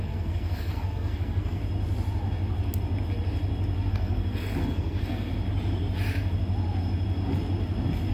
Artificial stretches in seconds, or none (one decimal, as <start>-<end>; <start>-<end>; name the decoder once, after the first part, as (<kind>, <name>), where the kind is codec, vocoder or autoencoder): 0.0-1.6 (codec, SNAC); 3.9-5.3